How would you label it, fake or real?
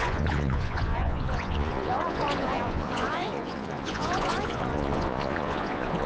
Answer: fake